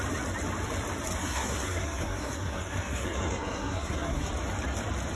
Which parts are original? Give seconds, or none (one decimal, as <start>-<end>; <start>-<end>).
0.0-1.2; 4.3-5.2